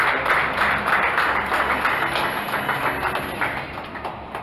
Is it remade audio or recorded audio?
recorded